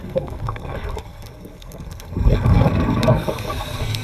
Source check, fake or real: fake